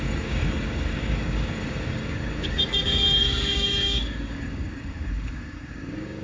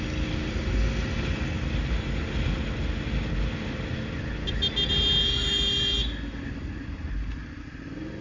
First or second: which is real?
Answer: second